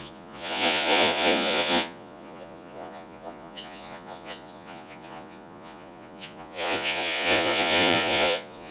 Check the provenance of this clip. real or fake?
fake